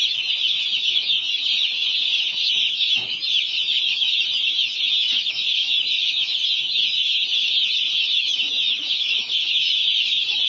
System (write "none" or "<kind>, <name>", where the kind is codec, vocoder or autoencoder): autoencoder, DAC-VAE